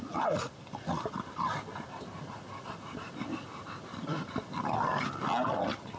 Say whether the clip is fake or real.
real